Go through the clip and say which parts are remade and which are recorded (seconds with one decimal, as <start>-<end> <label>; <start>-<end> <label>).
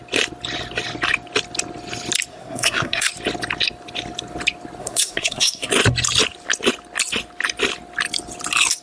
0.0-2.3 recorded; 2.3-3.1 remade; 3.1-4.8 recorded; 4.8-5.7 remade; 5.7-8.8 recorded